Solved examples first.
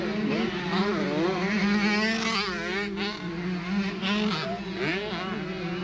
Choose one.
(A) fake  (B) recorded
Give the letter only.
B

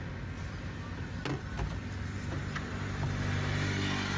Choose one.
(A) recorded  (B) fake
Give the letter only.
A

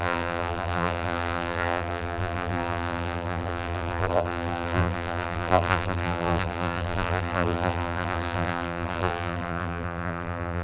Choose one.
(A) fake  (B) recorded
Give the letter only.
A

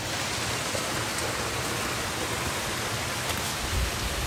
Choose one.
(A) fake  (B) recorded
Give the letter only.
B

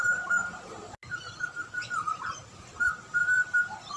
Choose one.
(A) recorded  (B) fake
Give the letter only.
B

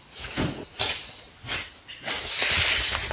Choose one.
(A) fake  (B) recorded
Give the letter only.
B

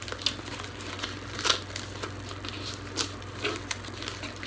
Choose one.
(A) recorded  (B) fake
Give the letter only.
A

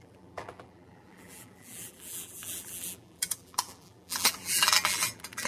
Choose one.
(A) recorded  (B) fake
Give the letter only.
B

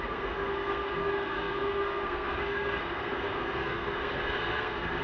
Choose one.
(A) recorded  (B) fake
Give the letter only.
B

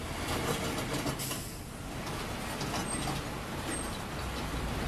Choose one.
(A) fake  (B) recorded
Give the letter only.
B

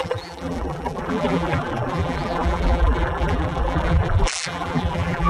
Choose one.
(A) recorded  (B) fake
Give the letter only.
B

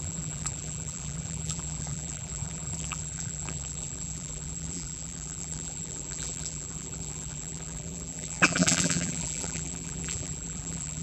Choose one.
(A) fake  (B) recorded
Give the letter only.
A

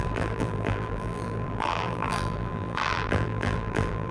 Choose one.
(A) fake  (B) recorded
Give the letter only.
A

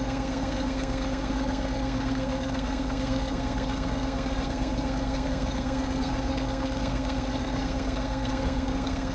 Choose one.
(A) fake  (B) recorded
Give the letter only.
A